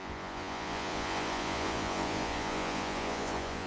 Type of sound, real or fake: fake